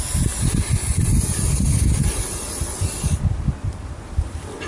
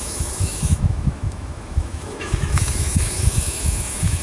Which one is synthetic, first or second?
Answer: second